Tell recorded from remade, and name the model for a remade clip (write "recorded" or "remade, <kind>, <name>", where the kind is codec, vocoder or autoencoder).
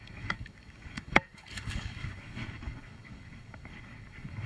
remade, codec, DAC